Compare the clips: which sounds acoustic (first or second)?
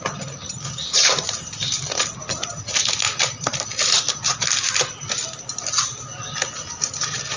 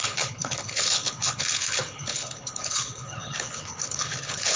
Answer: first